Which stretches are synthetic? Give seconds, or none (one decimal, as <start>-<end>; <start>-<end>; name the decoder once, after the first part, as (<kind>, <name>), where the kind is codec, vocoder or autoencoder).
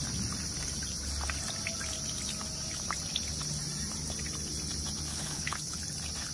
5.1-5.8 (codec, HILCodec)